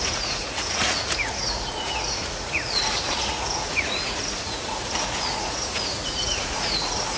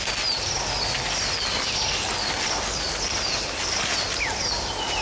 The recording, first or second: second